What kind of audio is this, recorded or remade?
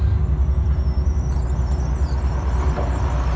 recorded